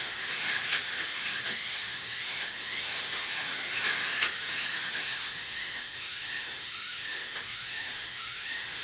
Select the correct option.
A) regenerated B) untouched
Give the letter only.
A